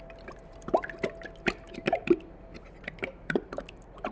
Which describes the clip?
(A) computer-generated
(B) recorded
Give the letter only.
B